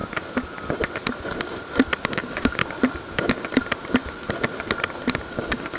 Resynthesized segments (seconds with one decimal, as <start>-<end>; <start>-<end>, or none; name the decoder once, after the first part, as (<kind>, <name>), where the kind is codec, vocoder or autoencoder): 2.1-2.6 (codec, DAC); 5.3-5.8